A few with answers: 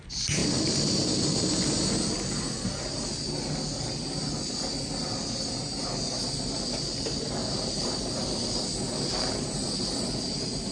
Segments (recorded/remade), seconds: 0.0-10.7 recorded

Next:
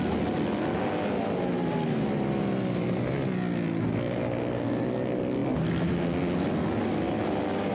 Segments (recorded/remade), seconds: 0.0-7.7 recorded

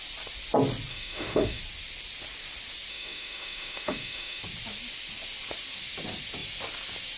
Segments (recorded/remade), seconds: 0.0-0.9 recorded; 0.9-1.6 remade; 1.6-2.9 recorded; 2.9-4.4 remade; 4.4-7.2 recorded